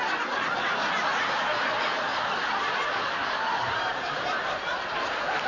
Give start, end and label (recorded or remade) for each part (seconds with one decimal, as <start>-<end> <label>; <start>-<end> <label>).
0.0-2.1 recorded; 2.1-5.5 remade